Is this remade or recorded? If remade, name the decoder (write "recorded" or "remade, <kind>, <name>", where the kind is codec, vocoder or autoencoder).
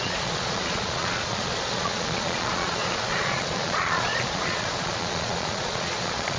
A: remade, vocoder, Vocos